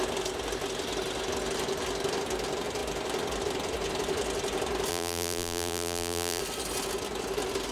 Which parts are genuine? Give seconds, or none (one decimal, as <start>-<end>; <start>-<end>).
0.0-4.9; 6.4-7.7